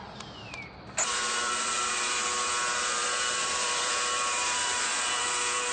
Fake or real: fake